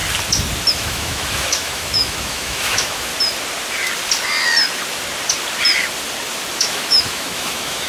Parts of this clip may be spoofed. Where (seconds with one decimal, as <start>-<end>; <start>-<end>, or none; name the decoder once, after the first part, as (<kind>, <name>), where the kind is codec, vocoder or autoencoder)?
0.7-3.1 (autoencoder, DAC-VAE); 6.5-7.9